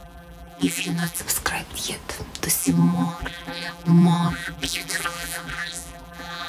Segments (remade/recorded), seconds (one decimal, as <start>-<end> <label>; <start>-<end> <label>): 0.0-1.2 remade; 1.2-2.6 recorded; 2.6-6.5 remade